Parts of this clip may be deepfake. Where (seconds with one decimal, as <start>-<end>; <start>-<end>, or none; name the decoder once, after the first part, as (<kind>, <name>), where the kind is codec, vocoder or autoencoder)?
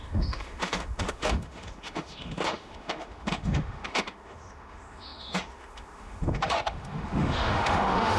0.0-8.2 (autoencoder, DAC-VAE)